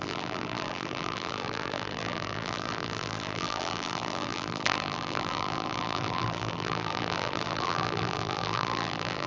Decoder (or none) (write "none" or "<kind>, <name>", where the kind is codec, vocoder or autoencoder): vocoder, BigVGAN v2